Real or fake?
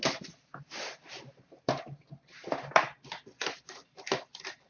real